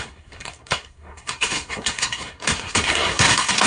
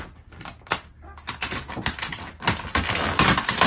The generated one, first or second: first